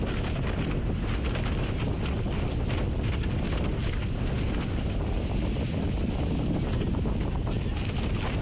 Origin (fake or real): real